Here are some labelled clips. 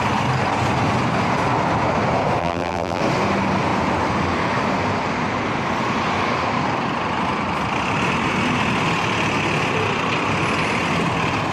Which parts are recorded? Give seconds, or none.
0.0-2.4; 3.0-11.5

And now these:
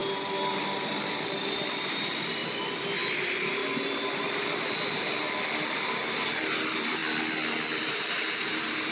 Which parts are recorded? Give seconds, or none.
0.0-0.5; 2.4-3.1; 3.6-5.7; 7.0-7.9